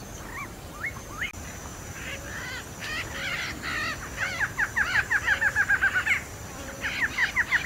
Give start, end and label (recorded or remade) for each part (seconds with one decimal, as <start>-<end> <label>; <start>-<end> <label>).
0.0-0.4 recorded; 0.4-1.1 remade; 1.1-1.7 recorded; 1.7-2.2 remade; 2.2-7.7 recorded